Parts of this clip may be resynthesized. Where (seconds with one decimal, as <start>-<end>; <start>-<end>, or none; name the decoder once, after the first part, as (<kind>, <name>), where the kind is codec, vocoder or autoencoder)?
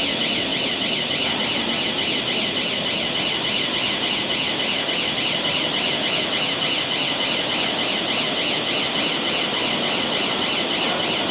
none